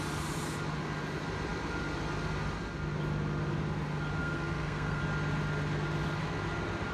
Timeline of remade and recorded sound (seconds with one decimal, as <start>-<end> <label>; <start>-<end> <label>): 0.0-4.2 recorded; 4.2-5.0 remade; 5.0-6.9 recorded